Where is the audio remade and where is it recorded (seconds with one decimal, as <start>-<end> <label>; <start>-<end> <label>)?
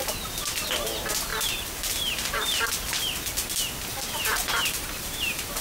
0.0-1.3 recorded; 1.3-3.0 remade; 3.0-3.9 recorded; 3.9-5.6 remade